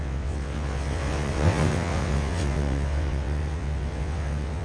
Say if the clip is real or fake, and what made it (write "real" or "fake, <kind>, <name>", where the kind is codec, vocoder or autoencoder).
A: fake, vocoder, WaveNeXt